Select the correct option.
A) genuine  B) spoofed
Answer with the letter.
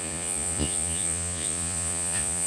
B